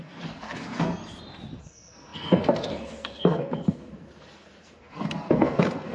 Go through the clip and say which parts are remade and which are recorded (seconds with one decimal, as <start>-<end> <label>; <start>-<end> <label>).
0.0-1.0 remade; 1.0-1.6 recorded; 1.6-5.9 remade